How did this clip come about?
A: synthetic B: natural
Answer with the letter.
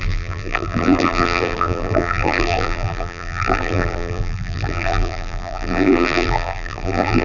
A